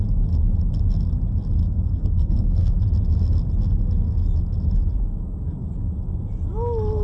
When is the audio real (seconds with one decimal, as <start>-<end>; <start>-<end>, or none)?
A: 0.0-1.6; 2.7-7.0